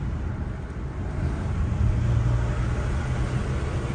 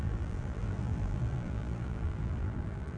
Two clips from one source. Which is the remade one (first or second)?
second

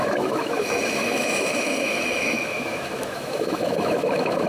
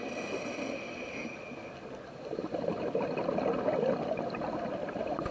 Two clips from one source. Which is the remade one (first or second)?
first